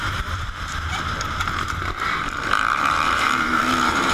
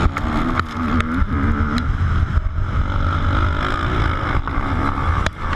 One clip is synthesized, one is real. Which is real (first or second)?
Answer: second